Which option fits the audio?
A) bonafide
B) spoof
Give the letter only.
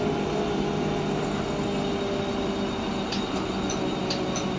A